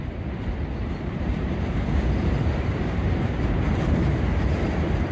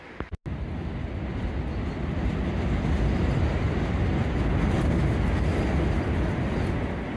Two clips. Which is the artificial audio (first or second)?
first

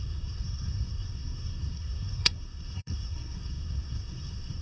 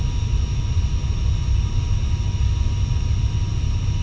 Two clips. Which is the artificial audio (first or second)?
first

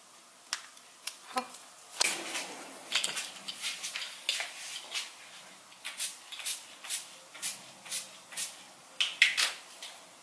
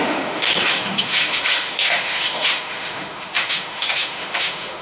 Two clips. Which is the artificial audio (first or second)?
second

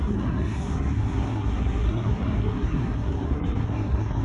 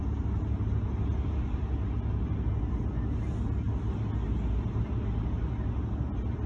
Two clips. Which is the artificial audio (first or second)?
first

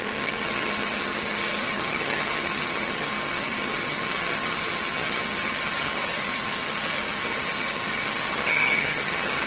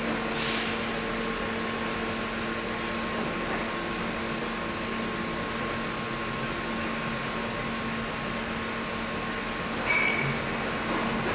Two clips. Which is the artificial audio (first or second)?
first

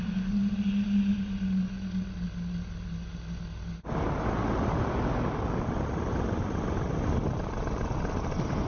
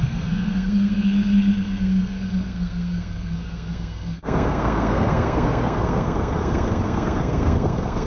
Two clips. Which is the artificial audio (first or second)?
second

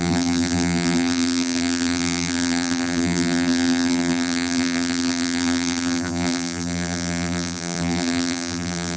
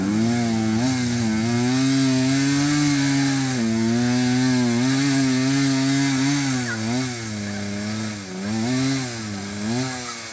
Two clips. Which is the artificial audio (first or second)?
first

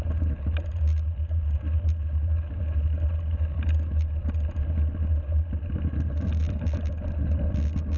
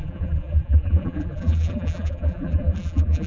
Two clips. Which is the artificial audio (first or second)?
second